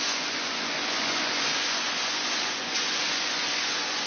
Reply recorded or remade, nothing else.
remade